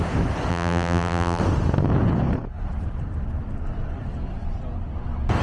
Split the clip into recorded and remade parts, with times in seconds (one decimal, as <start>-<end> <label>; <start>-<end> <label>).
0.0-0.5 recorded; 0.5-1.4 remade; 1.4-5.4 recorded